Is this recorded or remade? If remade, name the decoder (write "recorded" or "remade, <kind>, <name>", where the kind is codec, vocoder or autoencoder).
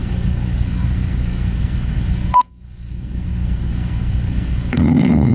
remade, codec, SNAC